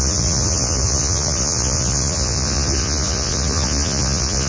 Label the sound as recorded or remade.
remade